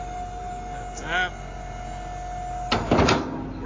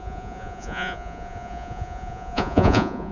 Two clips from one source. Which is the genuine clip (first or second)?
first